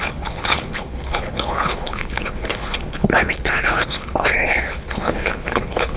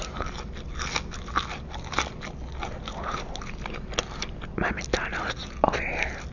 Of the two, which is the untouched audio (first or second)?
second